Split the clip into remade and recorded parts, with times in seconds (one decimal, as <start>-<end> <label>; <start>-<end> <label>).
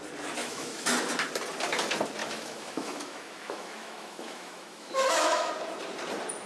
0.0-0.4 recorded; 0.4-0.9 remade; 0.9-2.2 recorded; 2.2-5.5 remade; 5.5-6.5 recorded